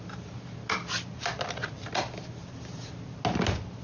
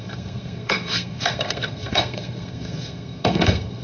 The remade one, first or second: second